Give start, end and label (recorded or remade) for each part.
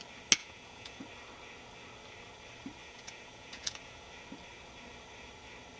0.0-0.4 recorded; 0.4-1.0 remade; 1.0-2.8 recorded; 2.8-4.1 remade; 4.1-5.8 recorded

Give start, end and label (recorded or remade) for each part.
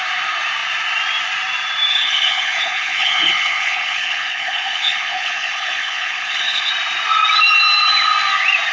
0.0-1.9 recorded; 1.9-6.7 remade; 6.7-8.7 recorded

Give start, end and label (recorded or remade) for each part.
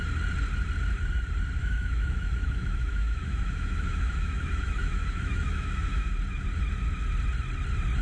0.0-1.6 recorded; 1.6-6.1 remade; 6.1-8.0 recorded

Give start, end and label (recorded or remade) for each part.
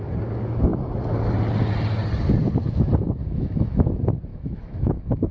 0.0-3.2 recorded; 3.2-3.8 remade; 3.8-4.3 recorded; 4.3-5.3 remade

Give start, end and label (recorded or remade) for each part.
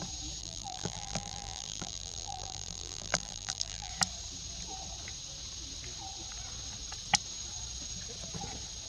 0.0-0.4 recorded; 0.4-3.9 remade; 3.9-8.9 recorded